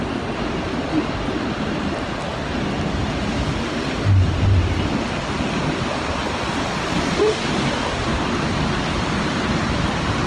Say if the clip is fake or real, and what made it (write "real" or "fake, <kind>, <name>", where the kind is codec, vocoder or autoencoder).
real